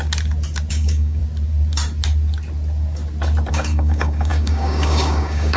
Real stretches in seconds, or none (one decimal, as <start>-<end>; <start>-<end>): 0.0-0.7; 1.2-3.5